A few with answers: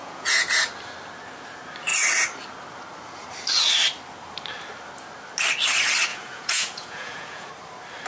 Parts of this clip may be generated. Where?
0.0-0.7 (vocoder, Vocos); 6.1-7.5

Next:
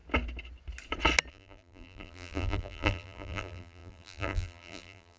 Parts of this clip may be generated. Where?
1.3-5.2 (vocoder, BigVGAN v2)

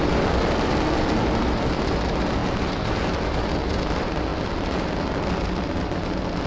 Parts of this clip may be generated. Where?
none

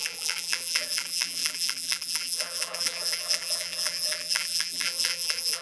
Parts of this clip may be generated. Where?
0.0-5.6 (vocoder, BigVGAN v2)

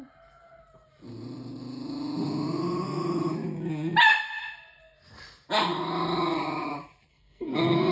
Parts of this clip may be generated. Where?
7.1-7.9 (codec, SNAC)